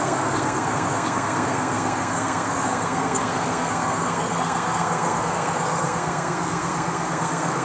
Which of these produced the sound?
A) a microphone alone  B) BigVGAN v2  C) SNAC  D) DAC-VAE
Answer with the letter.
C